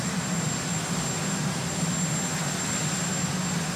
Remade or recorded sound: recorded